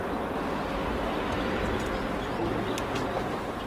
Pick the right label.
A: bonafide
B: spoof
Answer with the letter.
A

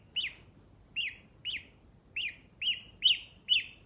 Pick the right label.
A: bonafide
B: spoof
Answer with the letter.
A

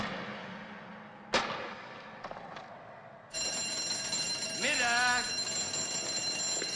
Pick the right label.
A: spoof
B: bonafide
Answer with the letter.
B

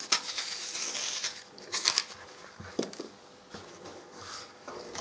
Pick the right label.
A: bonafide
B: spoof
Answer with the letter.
B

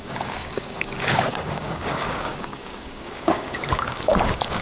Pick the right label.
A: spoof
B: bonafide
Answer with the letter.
A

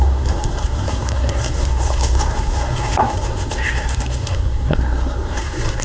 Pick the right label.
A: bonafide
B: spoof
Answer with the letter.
B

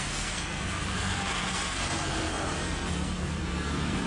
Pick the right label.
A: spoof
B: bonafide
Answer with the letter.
A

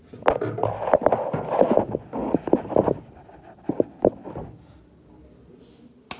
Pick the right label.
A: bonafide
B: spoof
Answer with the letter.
A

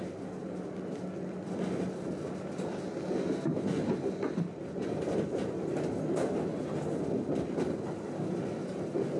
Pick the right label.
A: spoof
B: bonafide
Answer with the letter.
B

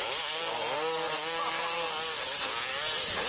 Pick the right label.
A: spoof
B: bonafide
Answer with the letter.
B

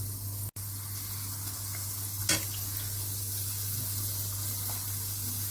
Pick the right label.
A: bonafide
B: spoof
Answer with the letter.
A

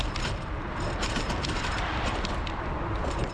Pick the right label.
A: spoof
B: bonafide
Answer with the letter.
A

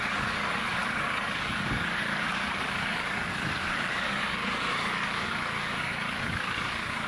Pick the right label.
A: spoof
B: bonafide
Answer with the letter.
A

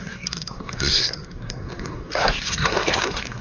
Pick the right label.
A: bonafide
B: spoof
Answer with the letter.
B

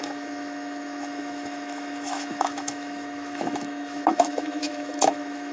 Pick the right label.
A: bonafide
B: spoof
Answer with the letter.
B